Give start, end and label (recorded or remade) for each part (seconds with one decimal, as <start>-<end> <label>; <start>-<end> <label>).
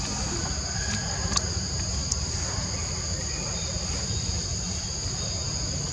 0.0-5.9 recorded